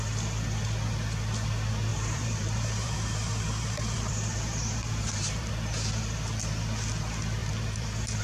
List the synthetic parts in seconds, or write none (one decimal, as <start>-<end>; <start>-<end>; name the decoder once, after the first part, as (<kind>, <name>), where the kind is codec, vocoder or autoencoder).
1.9-5.5 (vocoder, BigVGAN v2); 7.4-8.2